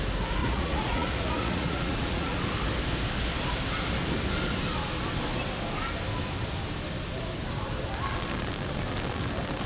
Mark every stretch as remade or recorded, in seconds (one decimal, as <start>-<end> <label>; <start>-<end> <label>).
0.0-0.4 recorded; 0.4-2.4 remade; 2.4-9.7 recorded

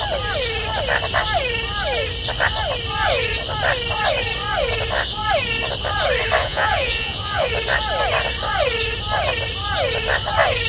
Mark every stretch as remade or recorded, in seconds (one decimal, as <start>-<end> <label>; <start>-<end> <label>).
0.0-6.4 recorded; 6.4-7.5 remade; 7.5-10.7 recorded

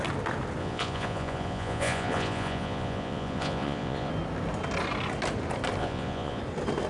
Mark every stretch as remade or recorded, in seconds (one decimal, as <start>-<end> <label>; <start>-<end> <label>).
0.0-0.6 recorded; 0.6-4.1 remade; 4.1-5.8 recorded; 5.8-6.4 remade; 6.4-6.9 recorded

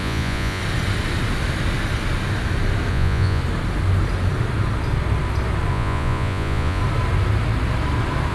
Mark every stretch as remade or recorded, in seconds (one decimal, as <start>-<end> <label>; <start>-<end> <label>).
0.0-0.6 remade; 0.6-2.9 recorded; 2.9-3.4 remade; 3.4-5.7 recorded; 5.7-6.8 remade; 6.8-8.3 recorded

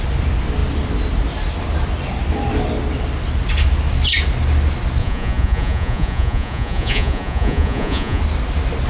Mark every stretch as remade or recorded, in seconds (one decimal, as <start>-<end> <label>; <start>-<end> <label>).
0.0-5.0 recorded; 5.0-8.2 remade; 8.2-8.9 recorded

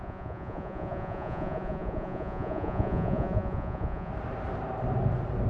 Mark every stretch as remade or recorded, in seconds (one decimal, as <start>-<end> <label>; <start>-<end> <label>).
0.0-4.1 remade; 4.1-5.5 recorded

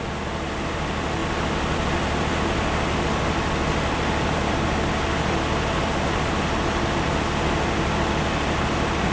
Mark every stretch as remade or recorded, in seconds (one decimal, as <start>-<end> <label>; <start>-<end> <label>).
0.0-9.1 recorded